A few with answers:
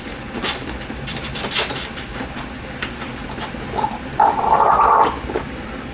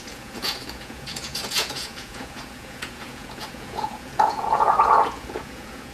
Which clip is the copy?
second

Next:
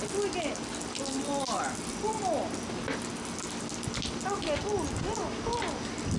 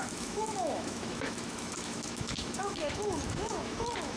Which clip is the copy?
second